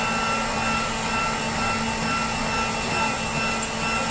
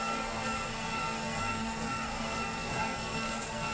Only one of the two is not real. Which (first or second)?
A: second